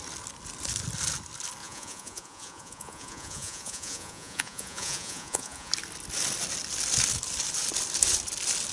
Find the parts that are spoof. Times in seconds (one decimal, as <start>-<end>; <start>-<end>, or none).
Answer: 1.6-5.7